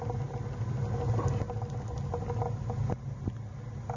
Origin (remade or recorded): recorded